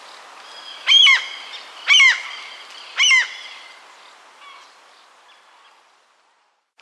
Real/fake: real